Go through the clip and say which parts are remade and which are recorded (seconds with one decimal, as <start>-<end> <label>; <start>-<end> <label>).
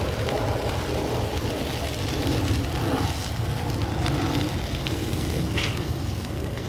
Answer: 0.0-4.8 recorded; 4.8-6.7 remade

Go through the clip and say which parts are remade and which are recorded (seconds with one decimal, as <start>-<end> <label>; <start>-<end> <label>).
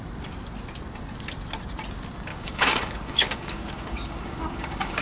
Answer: 0.0-2.3 recorded; 2.3-5.0 remade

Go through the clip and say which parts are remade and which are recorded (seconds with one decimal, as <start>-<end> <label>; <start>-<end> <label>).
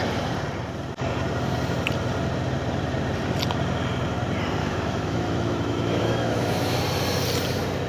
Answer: 0.0-4.6 recorded; 4.6-6.8 remade; 6.8-7.9 recorded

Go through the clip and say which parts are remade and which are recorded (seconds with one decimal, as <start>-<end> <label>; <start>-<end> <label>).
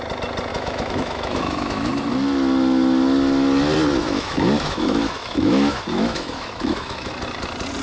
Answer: 0.0-0.5 recorded; 0.5-1.9 remade; 1.9-4.0 recorded; 4.0-7.1 remade; 7.1-7.8 recorded